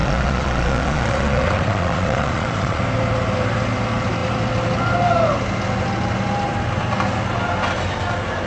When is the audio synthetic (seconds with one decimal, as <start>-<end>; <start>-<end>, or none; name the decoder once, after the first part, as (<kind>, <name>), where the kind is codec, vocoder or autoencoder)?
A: 0.0-2.8 (vocoder, Vocos)